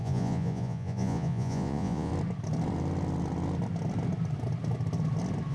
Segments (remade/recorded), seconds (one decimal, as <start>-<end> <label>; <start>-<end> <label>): 0.0-2.1 remade; 2.1-5.5 recorded